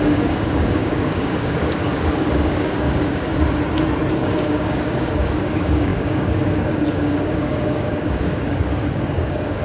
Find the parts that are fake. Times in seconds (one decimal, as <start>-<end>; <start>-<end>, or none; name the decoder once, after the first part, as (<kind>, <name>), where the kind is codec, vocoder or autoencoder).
0.0-3.3 (codec, DAC); 4.1-9.6